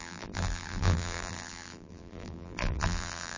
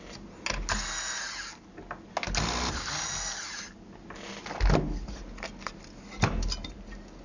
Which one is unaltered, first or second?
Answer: second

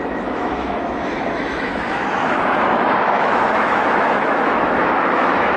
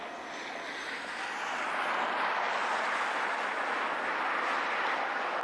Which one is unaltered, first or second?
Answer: second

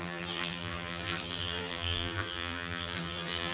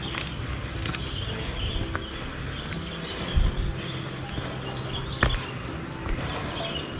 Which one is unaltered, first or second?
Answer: second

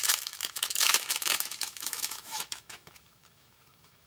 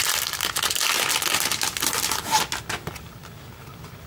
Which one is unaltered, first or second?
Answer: second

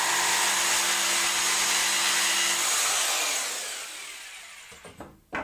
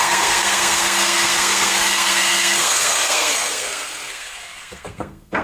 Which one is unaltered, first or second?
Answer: first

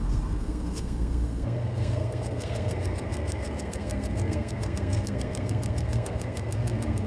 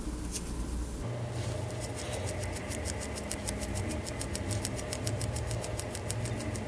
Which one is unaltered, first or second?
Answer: second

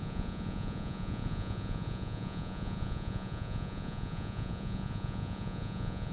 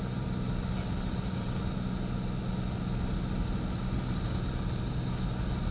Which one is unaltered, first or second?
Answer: second